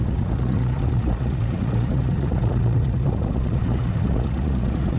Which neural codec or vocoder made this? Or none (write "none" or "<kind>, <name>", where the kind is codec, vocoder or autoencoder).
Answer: vocoder, Vocos